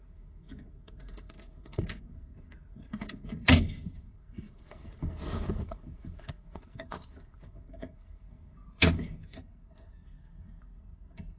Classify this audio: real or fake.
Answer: fake